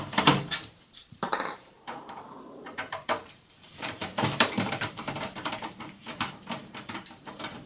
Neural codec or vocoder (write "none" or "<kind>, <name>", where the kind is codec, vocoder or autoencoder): vocoder, BigVGAN v2